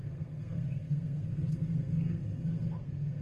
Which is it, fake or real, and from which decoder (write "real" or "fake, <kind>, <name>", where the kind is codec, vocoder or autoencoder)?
fake, codec, SNAC